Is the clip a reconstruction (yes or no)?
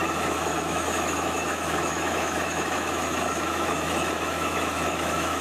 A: yes